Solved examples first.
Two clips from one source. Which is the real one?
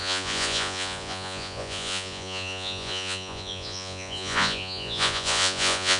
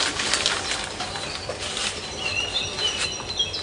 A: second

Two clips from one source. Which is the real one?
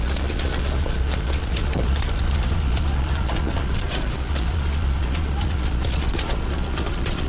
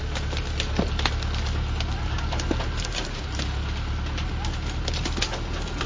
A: second